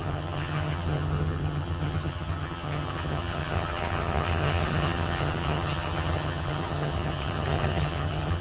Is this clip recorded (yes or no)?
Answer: no